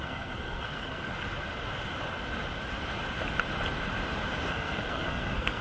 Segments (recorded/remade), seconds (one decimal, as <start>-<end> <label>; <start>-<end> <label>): 0.0-1.1 remade; 1.1-4.5 recorded; 4.5-5.6 remade